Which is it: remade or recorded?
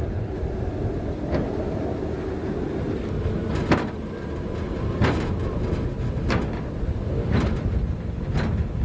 recorded